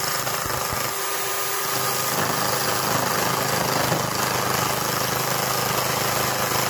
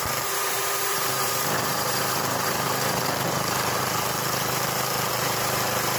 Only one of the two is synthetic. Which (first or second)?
second